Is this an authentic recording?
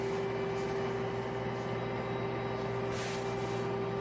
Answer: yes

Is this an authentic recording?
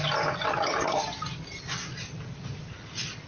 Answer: yes